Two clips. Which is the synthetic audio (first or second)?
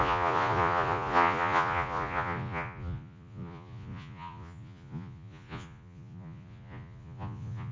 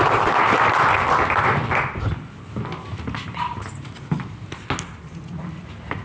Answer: first